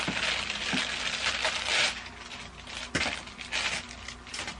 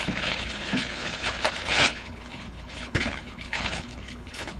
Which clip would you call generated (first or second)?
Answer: second